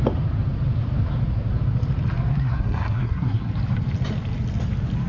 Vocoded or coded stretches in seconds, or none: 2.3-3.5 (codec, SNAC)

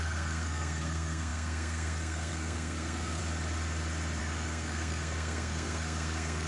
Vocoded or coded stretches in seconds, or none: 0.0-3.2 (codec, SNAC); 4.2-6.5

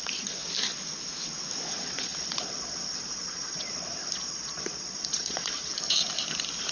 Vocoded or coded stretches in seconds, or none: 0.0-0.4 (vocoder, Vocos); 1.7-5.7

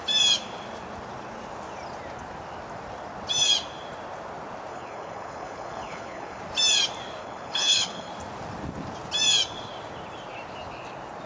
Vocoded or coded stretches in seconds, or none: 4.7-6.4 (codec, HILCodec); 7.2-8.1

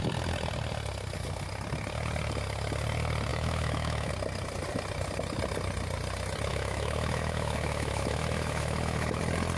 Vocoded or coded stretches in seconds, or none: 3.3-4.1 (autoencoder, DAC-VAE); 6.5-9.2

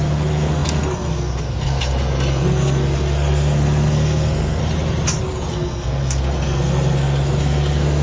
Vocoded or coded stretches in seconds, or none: 0.0-4.6 (codec, SNAC); 5.5-8.0

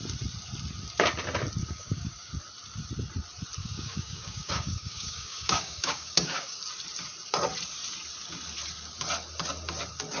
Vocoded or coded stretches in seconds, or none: 1.6-2.3 (codec, DAC); 3.6-6.6

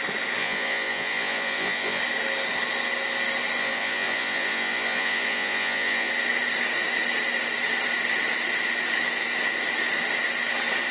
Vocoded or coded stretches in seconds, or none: 0.4-2.0 (vocoder, Vocos); 3.6-6.1